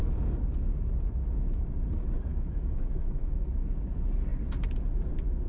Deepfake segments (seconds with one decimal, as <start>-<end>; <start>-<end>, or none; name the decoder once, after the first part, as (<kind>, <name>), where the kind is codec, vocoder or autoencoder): 2.3-3.4 (autoencoder, DAC-VAE)